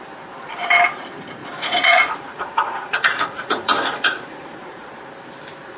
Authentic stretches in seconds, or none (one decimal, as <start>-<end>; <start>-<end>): 0.0-1.4; 4.9-5.8